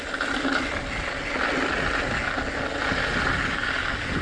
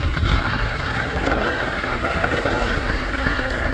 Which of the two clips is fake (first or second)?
second